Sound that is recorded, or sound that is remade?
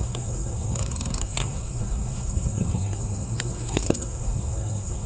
remade